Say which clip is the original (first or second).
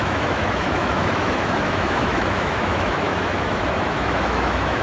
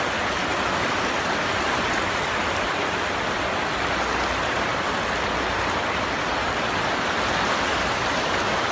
second